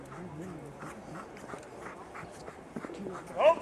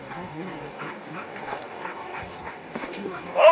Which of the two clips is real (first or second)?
first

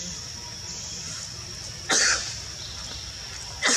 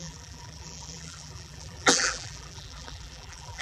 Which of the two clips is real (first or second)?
first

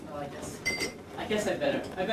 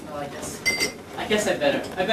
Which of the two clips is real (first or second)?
second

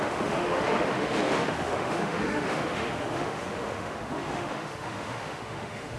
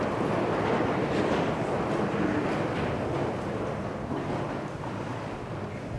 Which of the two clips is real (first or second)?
second